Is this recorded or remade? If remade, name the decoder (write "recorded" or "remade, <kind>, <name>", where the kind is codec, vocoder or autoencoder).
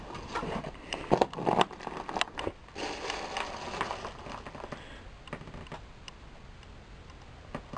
recorded